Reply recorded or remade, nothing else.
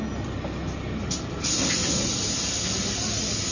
recorded